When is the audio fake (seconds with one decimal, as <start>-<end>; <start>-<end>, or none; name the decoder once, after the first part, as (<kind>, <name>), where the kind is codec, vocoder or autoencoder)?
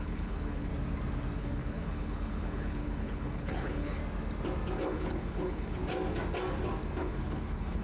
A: 0.0-0.7 (codec, HILCodec); 1.4-4.0; 4.8-5.8; 7.0-7.8